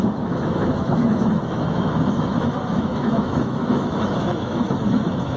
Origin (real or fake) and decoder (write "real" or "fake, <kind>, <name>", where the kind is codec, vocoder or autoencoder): fake, autoencoder, DAC-VAE